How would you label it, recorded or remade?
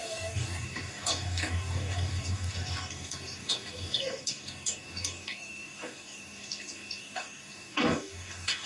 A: remade